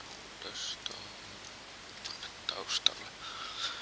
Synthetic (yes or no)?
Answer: no